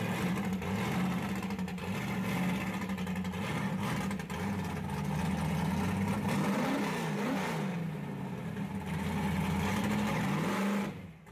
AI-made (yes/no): no